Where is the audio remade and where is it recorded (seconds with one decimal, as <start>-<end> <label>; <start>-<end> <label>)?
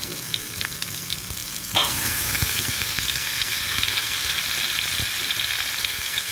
0.0-4.4 remade; 4.4-5.8 recorded; 5.8-6.3 remade